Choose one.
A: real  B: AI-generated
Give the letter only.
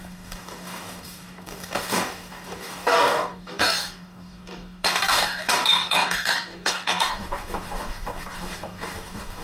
B